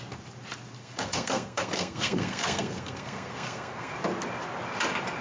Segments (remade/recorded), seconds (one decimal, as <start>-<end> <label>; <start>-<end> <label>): 0.0-0.8 recorded; 0.8-3.9 remade; 3.9-5.2 recorded